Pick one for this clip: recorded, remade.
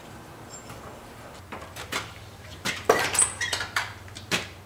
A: remade